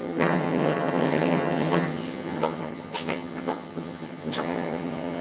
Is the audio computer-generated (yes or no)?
yes